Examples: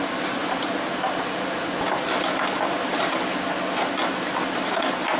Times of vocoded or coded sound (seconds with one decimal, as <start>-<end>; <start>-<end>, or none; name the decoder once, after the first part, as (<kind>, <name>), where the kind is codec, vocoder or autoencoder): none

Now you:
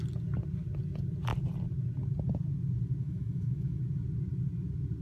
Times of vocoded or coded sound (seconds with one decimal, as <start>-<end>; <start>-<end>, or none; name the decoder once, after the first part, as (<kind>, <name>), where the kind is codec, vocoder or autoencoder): 3.0-3.8 (autoencoder, DAC-VAE)

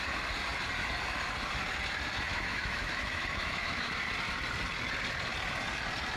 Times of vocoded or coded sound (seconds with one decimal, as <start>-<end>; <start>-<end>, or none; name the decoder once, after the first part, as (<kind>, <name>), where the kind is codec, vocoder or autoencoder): 2.3-3.9 (autoencoder, DAC-VAE)